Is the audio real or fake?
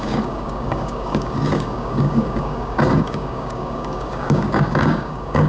fake